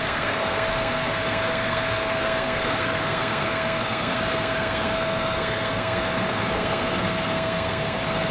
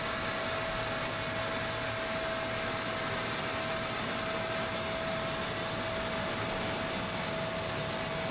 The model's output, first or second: first